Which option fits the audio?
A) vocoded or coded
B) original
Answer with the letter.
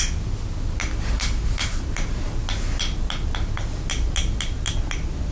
B